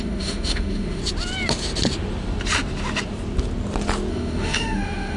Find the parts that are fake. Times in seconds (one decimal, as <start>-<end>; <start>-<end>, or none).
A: 0.0-1.0; 4.1-5.2